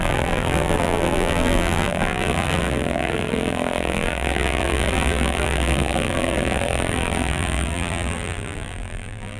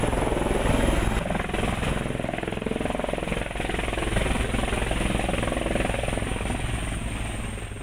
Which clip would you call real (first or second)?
second